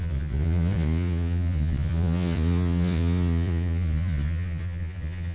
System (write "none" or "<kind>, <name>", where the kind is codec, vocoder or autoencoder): vocoder, Vocos